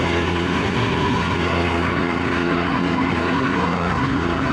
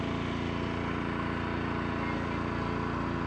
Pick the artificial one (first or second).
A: first